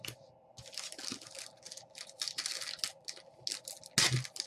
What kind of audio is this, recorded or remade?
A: recorded